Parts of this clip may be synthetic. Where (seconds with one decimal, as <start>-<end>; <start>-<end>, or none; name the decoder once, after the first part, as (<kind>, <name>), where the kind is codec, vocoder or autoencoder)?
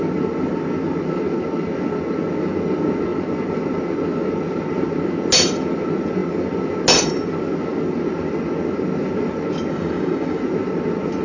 9.7-10.4 (codec, DAC)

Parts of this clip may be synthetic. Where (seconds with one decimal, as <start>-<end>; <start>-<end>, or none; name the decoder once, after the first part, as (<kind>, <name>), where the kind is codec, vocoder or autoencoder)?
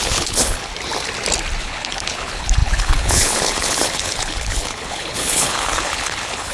0.0-0.7 (codec, HILCodec); 1.6-6.5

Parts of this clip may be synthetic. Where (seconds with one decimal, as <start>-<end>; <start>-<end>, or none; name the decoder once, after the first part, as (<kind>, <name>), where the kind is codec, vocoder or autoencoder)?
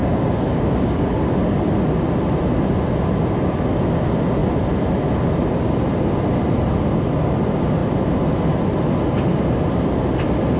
0.0-1.7 (codec, DAC)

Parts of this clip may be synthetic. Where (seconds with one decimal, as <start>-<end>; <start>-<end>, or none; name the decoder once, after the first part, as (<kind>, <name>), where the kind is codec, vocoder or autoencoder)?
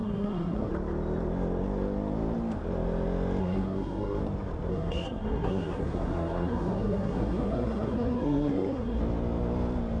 0.0-0.7 (codec, SNAC); 3.4-4.2; 4.7-9.0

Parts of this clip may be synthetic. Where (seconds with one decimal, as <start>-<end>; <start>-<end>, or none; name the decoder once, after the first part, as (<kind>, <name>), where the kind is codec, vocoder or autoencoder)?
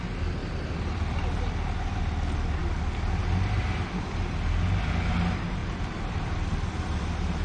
0.4-1.5 (vocoder, BigVGAN v2); 5.6-7.0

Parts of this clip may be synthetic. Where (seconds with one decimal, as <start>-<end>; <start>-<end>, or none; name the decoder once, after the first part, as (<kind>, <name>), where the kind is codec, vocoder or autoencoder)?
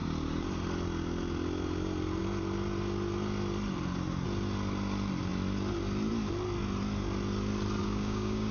7.8-8.5 (codec, DAC)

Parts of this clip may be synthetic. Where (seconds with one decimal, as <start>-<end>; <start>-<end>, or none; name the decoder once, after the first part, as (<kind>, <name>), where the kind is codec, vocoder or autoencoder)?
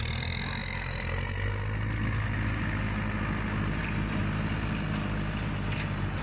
none